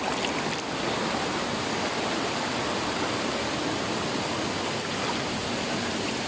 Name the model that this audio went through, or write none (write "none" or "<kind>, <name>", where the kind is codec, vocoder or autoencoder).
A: none